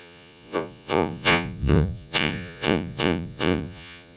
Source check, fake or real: fake